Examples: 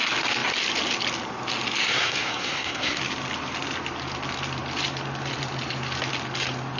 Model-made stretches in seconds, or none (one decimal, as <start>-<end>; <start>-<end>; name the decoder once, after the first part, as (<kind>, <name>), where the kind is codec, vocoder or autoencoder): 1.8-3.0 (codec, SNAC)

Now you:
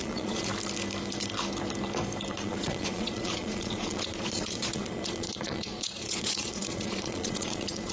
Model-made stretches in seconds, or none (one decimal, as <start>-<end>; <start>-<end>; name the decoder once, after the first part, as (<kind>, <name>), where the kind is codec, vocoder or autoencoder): 0.0-0.5 (vocoder, Vocos); 2.3-7.9

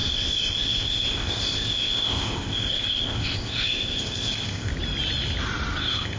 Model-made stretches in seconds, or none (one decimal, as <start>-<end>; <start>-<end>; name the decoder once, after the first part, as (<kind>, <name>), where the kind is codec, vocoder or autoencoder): 0.0-4.7 (codec, ZipCodec); 5.8-6.2

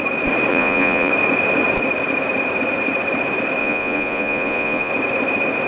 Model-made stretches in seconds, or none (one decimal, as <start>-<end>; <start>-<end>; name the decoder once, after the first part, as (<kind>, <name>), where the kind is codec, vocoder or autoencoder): 0.5-1.1 (vocoder, Vocos); 3.6-4.9

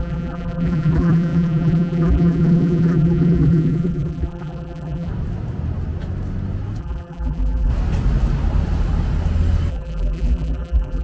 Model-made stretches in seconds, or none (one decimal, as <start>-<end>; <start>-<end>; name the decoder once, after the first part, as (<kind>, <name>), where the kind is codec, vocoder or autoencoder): 0.0-5.1 (vocoder, BigVGAN v2); 6.8-7.7; 9.7-11.0